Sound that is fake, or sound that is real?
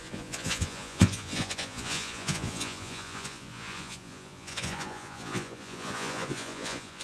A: fake